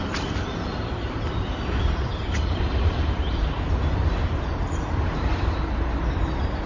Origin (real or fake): real